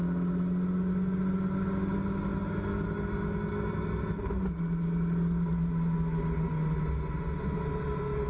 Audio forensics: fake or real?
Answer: real